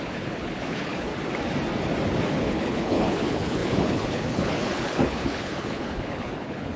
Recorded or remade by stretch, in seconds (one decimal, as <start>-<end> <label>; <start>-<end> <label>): 0.0-1.1 remade; 1.1-2.2 recorded; 2.2-6.8 remade